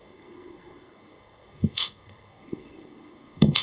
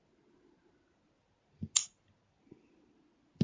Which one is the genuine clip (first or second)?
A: second